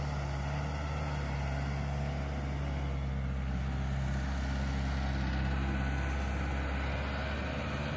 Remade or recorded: recorded